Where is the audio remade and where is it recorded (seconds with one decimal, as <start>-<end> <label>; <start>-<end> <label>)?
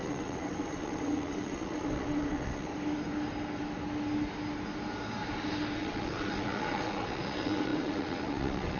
0.0-2.7 remade; 2.7-5.8 recorded; 5.8-8.8 remade